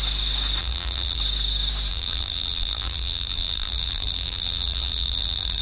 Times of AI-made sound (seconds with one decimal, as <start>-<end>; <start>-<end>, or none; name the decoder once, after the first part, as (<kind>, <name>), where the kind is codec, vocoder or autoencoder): 0.6-1.2 (vocoder, BigVGAN v2); 1.9-5.6